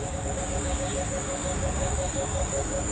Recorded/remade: remade